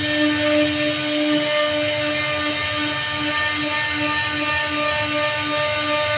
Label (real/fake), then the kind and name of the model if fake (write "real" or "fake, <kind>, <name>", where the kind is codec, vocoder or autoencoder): real